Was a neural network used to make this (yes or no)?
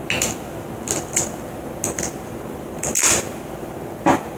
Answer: no